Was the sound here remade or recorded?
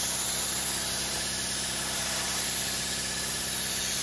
recorded